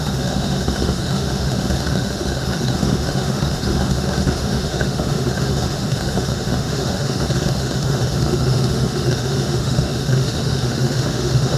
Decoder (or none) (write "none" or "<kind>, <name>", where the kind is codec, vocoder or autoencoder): autoencoder, DAC-VAE